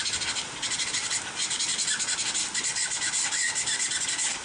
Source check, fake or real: real